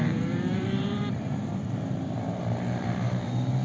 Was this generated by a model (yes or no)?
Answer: yes